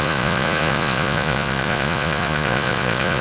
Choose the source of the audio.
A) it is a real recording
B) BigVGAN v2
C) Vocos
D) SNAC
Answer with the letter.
C